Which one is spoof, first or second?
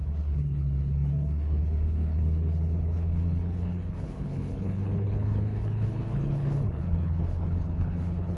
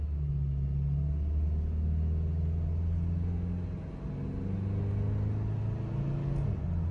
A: first